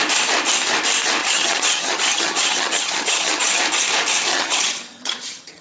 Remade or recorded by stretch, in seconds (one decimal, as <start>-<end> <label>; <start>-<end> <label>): 0.0-1.2 recorded; 1.2-3.6 remade; 3.6-4.3 recorded; 4.3-5.6 remade